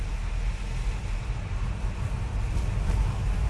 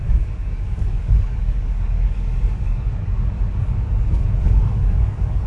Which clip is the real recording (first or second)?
first